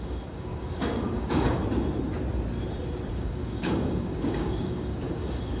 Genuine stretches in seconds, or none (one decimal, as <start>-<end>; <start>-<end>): 1.6-3.1